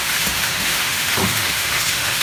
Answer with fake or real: fake